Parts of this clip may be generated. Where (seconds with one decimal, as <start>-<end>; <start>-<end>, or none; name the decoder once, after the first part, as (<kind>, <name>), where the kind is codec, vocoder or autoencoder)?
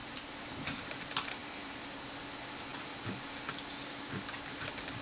0.0-0.8 (vocoder, BigVGAN v2); 1.4-2.1